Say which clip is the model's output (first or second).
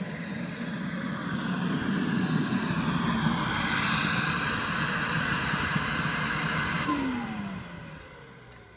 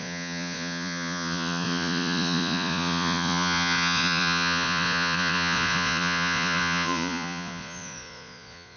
second